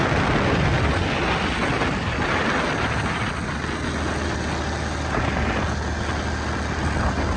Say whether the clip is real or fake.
real